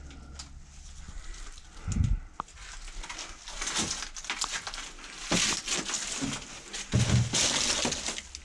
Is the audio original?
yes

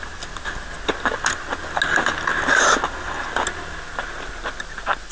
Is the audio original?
yes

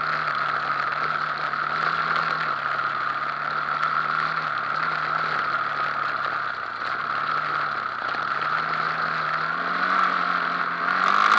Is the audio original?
yes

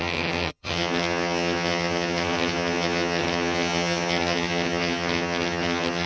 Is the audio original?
no